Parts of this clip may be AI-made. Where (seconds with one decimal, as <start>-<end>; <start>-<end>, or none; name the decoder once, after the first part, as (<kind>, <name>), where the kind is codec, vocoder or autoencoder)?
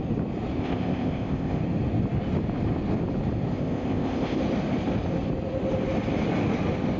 0.6-1.6 (codec, ZipCodec); 3.5-4.4